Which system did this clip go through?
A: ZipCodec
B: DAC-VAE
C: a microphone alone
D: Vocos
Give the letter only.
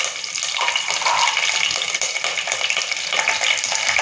C